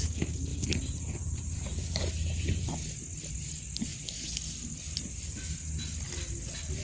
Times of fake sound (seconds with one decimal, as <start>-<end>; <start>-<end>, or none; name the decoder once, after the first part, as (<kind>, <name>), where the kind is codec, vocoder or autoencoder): none